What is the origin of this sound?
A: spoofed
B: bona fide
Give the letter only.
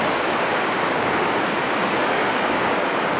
A